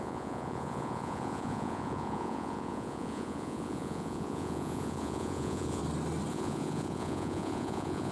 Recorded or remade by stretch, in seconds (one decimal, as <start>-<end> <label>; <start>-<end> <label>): 0.0-5.8 remade; 5.8-6.3 recorded; 6.3-8.1 remade